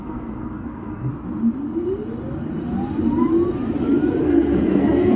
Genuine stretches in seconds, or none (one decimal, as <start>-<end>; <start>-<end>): 1.1-4.2